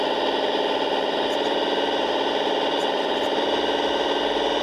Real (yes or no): yes